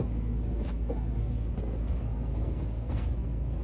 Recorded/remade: remade